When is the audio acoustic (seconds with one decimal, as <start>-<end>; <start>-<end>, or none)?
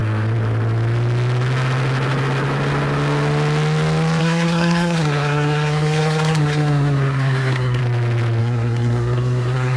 0.0-4.2; 7.8-8.4